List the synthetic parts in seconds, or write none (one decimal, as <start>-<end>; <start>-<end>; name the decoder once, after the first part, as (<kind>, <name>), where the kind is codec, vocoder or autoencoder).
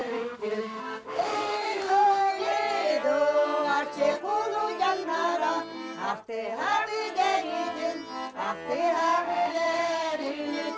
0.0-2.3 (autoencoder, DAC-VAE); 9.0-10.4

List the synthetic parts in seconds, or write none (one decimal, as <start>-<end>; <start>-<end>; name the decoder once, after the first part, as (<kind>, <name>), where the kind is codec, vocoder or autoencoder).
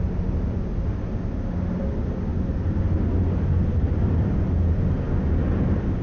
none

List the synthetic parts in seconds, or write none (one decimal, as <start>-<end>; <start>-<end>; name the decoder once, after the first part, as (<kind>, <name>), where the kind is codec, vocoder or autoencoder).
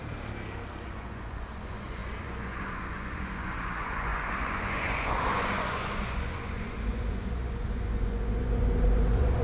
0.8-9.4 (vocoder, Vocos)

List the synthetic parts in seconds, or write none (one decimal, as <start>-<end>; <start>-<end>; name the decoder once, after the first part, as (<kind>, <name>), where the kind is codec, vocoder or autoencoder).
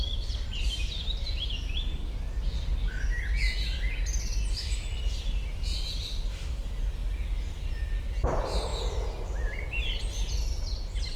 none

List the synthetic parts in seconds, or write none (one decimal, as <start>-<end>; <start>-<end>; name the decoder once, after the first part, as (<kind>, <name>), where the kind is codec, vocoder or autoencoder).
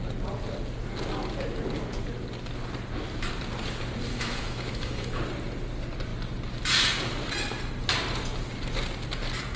4.1-5.2 (autoencoder, DAC-VAE)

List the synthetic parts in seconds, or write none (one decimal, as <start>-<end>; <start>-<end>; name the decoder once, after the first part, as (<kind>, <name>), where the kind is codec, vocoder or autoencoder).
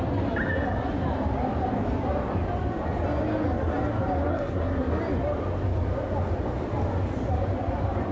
4.3-4.9 (codec, SNAC)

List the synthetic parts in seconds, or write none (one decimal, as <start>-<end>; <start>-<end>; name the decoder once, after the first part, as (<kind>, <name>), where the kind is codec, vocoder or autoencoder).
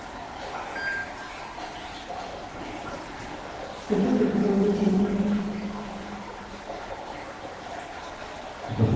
none